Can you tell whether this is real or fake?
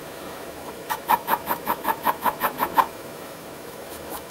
fake